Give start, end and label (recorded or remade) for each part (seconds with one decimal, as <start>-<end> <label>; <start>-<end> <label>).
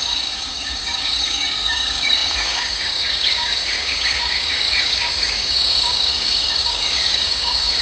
0.0-7.8 remade